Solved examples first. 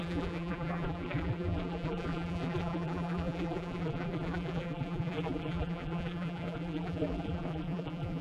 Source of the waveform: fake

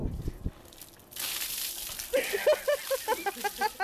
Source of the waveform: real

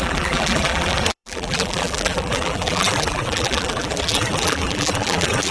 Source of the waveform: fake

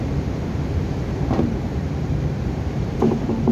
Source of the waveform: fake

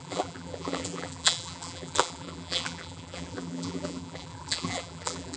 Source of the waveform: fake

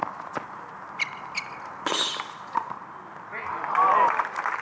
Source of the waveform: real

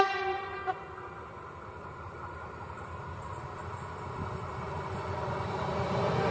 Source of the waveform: real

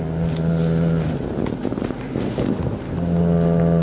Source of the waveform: real